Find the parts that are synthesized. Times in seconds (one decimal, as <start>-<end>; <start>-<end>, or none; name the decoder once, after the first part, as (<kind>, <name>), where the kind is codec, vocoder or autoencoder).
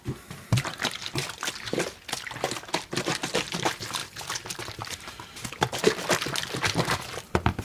none